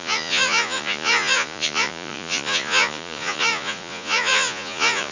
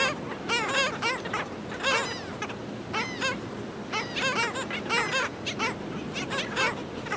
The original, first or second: second